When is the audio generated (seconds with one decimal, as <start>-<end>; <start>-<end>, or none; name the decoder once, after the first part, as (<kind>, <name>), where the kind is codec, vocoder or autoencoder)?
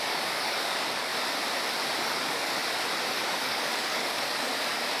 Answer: 0.0-1.1 (codec, DAC); 2.0-2.6; 3.1-5.0